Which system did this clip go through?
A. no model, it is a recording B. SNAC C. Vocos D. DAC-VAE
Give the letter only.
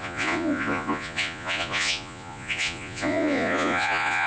C